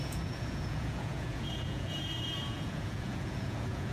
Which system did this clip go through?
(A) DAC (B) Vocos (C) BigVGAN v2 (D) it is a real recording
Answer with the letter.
B